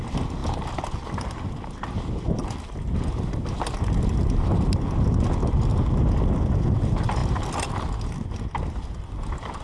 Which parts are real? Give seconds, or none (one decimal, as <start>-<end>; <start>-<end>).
0.0-9.6